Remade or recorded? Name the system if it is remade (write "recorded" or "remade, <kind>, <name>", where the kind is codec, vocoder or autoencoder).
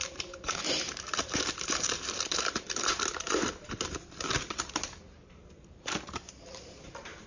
remade, vocoder, BigVGAN v2